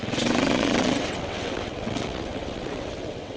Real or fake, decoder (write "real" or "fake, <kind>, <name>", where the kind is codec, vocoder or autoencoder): fake, vocoder, WaveNeXt